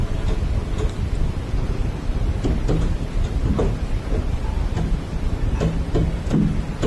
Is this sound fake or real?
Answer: real